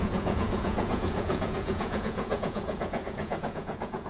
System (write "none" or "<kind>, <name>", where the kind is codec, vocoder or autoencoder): vocoder, Vocos